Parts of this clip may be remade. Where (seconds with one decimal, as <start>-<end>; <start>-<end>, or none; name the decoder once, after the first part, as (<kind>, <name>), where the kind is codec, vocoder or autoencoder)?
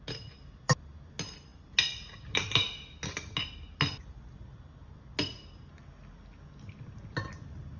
none